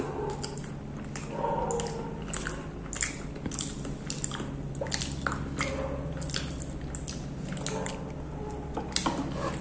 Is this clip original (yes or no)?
yes